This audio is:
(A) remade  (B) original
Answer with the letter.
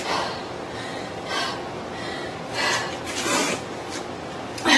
B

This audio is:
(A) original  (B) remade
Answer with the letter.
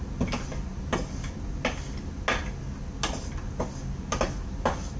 A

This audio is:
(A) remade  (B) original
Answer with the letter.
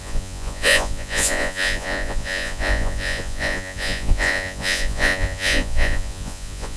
A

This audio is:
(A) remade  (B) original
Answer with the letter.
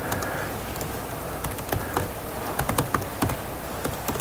B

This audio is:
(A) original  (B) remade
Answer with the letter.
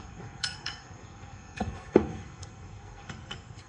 B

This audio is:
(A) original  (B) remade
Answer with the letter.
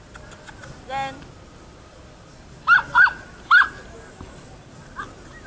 A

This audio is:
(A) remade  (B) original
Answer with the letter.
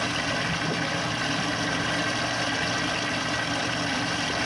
B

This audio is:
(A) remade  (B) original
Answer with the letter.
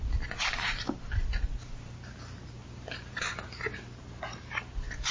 B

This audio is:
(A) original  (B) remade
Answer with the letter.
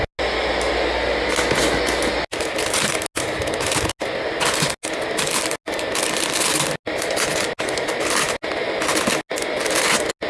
A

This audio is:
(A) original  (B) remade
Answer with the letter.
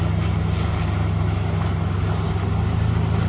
A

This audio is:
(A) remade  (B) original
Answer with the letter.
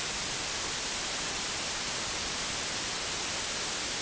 B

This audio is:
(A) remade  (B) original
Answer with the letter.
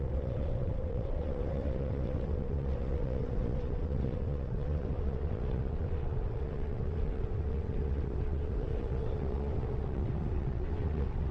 A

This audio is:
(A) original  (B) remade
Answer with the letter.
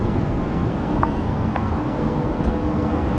B